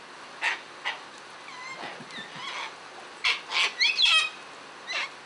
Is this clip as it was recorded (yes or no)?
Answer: yes